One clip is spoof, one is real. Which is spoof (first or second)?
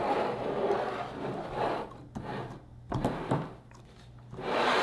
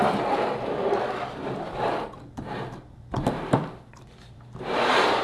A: second